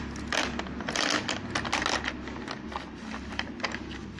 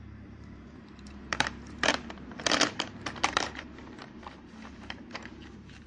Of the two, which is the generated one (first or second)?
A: second